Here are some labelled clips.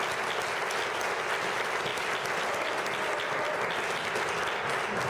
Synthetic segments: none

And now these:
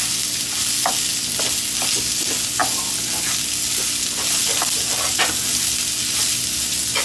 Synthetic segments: none

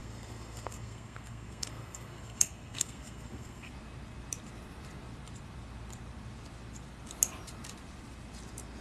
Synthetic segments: 0.0-3.7 (codec, SNAC)

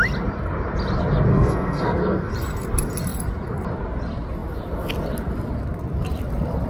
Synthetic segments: 1.3-2.3 (codec, SNAC)

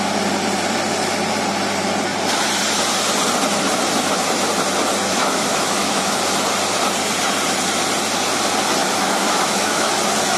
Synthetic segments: 5.1-6.2 (autoencoder, DAC-VAE); 8.8-9.9

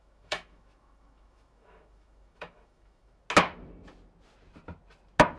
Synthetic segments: 0.0-3.2 (autoencoder, DAC-VAE)

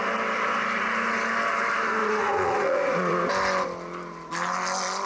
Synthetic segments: 2.0-3.3 (vocoder, Vocos)